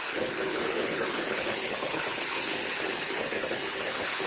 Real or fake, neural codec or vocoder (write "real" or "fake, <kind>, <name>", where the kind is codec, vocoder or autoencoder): fake, codec, HILCodec